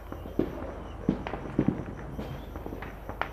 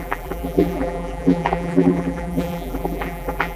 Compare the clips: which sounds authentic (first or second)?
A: first